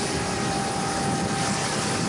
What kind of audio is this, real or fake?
real